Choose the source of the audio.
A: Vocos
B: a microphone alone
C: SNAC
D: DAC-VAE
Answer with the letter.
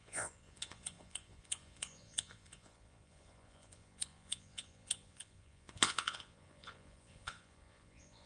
A